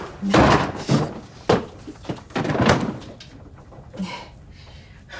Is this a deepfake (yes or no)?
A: no